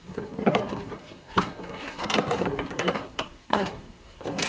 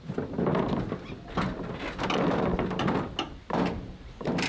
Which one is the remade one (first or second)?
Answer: first